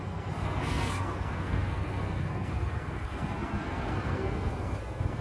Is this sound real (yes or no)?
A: no